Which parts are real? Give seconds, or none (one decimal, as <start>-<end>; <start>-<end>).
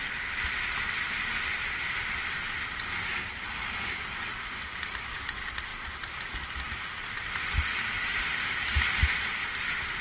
0.0-4.3; 4.9-7.7